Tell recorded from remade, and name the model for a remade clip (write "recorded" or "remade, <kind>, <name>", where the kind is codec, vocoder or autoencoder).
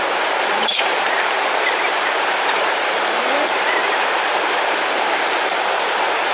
remade, vocoder, BigVGAN v2